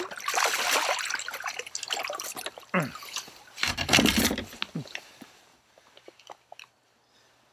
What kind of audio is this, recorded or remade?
recorded